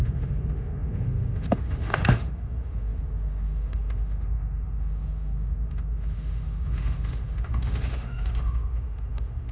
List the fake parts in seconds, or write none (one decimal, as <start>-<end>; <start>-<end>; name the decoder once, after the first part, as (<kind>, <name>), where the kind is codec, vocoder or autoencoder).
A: 0.0-9.5 (autoencoder, DAC-VAE)